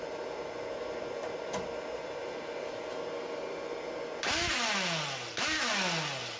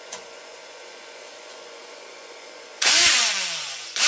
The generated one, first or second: second